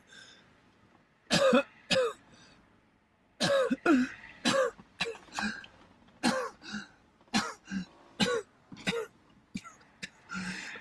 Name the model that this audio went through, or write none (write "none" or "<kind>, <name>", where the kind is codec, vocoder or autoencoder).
none